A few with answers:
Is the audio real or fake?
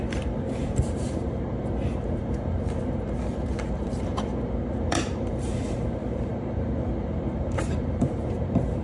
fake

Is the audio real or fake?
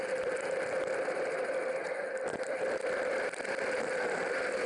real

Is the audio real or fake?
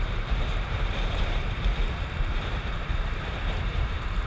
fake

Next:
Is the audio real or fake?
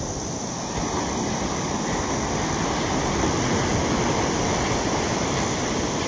real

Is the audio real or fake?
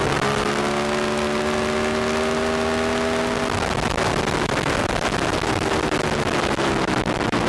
fake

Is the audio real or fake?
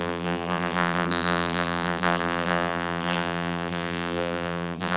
fake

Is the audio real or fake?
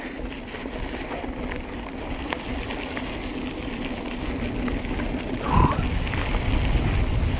real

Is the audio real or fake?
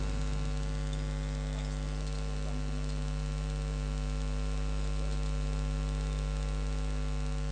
real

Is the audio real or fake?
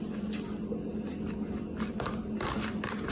real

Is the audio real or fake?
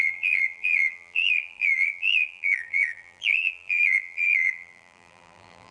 fake